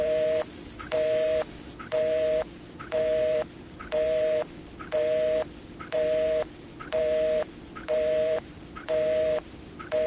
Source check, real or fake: fake